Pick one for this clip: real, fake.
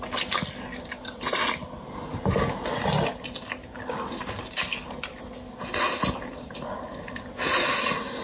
real